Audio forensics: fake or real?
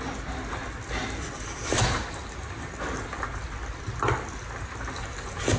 real